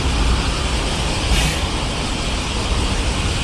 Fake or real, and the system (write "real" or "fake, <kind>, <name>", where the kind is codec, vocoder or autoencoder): real